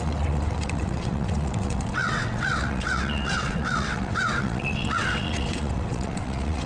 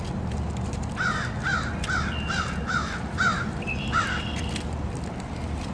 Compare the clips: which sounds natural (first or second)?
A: second